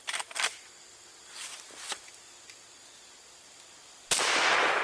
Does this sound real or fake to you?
real